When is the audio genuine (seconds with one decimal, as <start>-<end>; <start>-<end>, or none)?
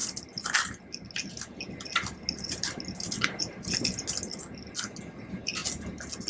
0.0-6.3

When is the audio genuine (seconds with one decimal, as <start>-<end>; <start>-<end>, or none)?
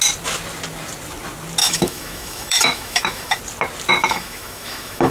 0.0-1.6; 3.4-4.0